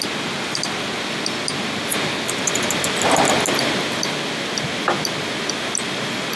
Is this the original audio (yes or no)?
yes